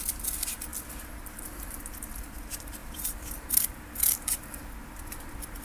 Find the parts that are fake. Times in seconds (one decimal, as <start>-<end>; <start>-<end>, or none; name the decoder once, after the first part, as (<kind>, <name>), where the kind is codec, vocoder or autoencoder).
0.0-5.6 (vocoder, BigVGAN v2)